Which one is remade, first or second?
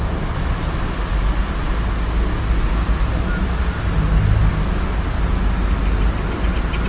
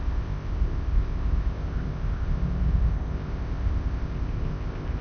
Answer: second